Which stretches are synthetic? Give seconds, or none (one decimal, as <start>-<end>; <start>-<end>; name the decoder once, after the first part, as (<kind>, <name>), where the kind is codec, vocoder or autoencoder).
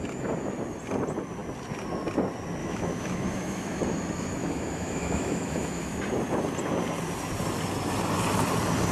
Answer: 2.6-3.8 (autoencoder, DAC-VAE); 4.4-6.0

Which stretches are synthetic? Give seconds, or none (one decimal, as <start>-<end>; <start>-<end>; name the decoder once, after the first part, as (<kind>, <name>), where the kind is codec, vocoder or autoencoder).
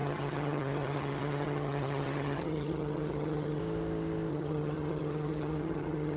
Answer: 0.0-3.6 (vocoder, HiFi-GAN); 4.3-6.2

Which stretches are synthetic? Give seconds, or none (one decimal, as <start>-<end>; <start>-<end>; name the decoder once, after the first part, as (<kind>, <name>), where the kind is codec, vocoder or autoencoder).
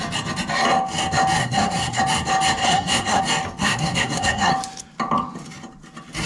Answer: 1.4-2.0 (codec, SNAC); 2.6-3.2; 3.6-4.5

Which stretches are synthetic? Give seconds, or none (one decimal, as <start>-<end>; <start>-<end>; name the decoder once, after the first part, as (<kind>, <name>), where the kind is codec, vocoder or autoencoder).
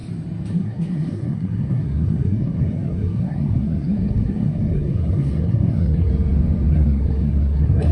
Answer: 0.5-6.1 (codec, SNAC); 6.7-7.9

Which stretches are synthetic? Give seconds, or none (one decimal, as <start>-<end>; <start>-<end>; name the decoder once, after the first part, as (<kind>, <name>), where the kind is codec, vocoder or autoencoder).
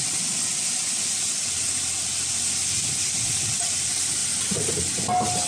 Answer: none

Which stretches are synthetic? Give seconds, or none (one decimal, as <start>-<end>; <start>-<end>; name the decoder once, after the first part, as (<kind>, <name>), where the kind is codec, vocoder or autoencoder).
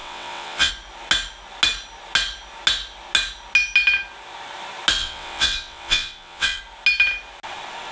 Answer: 0.0-0.7 (vocoder, WaveNeXt); 5.0-6.6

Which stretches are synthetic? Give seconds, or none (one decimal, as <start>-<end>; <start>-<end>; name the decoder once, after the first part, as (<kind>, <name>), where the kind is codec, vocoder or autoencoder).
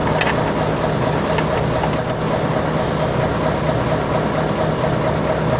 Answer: none